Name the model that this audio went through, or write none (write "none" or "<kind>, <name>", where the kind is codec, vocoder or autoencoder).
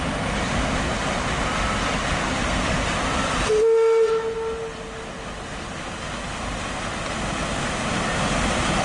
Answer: none